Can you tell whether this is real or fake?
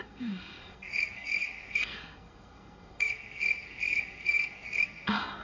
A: fake